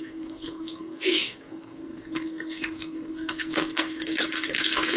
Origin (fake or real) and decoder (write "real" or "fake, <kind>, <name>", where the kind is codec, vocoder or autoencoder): fake, codec, SNAC